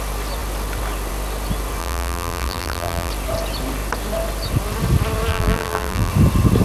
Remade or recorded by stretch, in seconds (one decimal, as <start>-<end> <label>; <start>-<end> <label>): 0.0-1.8 recorded; 1.8-3.1 remade; 3.1-5.3 recorded; 5.3-6.1 remade; 6.1-6.6 recorded

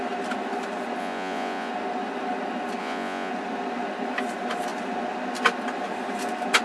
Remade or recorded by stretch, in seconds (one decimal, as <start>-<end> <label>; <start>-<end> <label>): 0.0-1.0 recorded; 1.0-1.7 remade; 1.7-2.8 recorded; 2.8-3.3 remade; 3.3-6.6 recorded

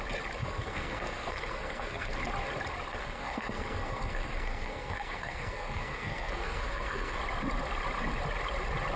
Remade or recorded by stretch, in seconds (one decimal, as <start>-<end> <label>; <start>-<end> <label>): 0.0-0.4 recorded; 0.4-2.2 remade; 2.2-3.0 recorded; 3.0-7.2 remade; 7.2-9.0 recorded

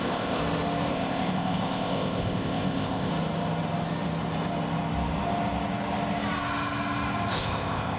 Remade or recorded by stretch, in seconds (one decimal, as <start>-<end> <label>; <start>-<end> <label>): 0.0-0.4 remade; 0.4-0.9 recorded; 0.9-3.1 remade; 3.1-7.3 recorded; 7.3-8.0 remade

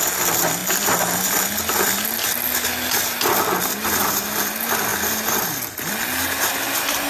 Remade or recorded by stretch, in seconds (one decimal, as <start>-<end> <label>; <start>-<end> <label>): 0.0-4.9 recorded; 4.9-5.9 remade; 5.9-7.1 recorded